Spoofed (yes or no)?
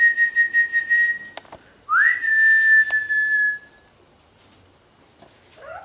no